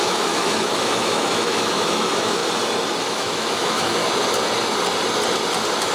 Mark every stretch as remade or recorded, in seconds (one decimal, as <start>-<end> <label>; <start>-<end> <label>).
0.0-2.4 remade; 2.4-3.0 recorded; 3.0-4.0 remade; 4.0-5.9 recorded